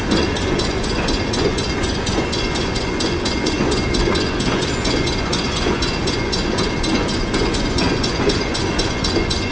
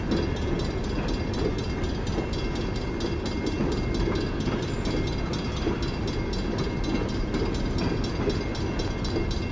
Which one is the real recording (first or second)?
second